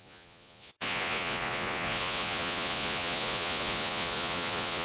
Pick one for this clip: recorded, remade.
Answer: remade